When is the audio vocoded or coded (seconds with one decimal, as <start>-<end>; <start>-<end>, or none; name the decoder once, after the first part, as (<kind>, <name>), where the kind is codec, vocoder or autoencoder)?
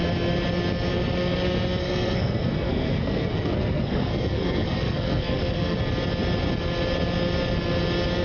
1.8-5.8 (codec, SNAC)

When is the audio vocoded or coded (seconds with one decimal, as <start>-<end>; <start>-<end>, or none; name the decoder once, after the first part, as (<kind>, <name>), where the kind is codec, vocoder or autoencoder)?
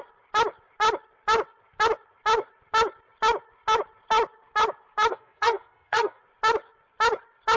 5.1-6.2 (codec, SNAC)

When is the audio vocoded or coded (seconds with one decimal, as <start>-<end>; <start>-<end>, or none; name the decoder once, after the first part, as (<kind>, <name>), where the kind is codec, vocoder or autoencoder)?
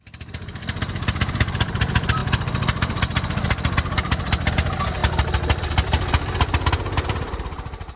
0.0-2.2 (vocoder, BigVGAN v2); 4.5-5.0; 5.6-8.0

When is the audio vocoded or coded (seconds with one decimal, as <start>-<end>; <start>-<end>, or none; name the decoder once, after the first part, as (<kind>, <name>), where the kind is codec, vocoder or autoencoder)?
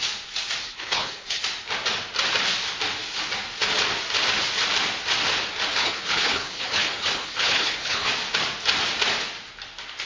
0.6-1.4 (codec, HILCodec); 5.7-8.1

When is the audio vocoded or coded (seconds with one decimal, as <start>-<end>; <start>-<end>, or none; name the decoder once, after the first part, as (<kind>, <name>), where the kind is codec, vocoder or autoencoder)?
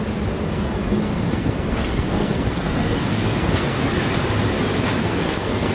0.5-3.9 (codec, SNAC); 5.0-5.7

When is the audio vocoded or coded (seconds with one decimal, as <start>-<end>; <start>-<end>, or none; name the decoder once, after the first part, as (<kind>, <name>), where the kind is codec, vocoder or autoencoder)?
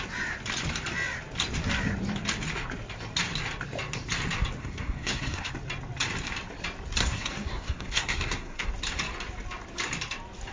4.6-5.5 (codec, SNAC); 7.0-8.7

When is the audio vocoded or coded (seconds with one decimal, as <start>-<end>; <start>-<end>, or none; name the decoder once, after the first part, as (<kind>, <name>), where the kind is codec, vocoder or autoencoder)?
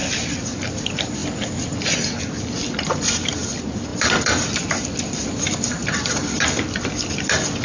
0.0-1.2 (vocoder, BigVGAN v2); 2.0-7.6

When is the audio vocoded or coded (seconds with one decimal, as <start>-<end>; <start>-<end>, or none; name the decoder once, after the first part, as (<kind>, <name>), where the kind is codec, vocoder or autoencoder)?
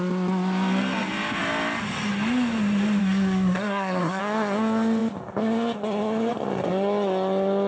3.0-4.2 (codec, SNAC)